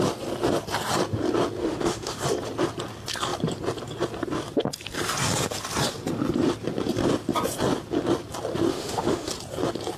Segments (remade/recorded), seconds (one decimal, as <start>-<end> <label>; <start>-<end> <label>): 0.0-1.6 recorded; 1.6-2.2 remade; 2.2-8.7 recorded; 8.7-9.3 remade; 9.3-10.0 recorded